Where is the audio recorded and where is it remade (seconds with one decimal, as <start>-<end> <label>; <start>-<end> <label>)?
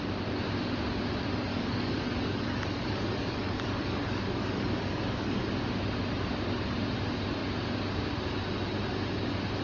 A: 0.0-1.5 recorded; 1.5-5.5 remade; 5.5-9.6 recorded